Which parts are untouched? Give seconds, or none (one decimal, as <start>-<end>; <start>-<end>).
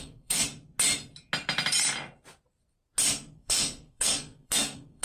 0.4-3.2